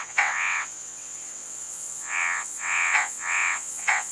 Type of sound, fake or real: fake